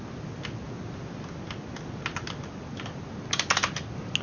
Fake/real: real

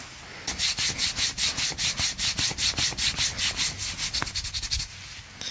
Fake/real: real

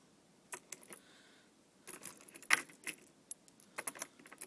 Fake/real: real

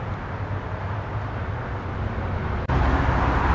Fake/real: real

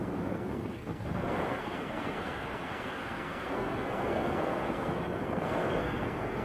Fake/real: fake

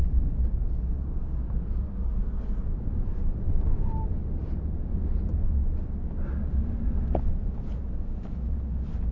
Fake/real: real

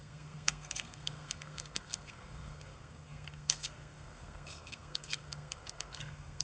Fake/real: fake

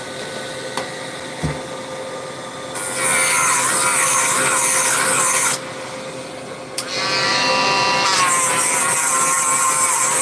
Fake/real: real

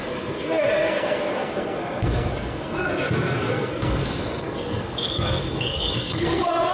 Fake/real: fake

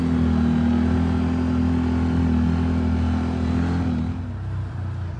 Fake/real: real